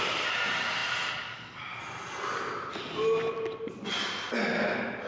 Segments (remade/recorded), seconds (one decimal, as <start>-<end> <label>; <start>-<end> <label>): 0.0-5.1 recorded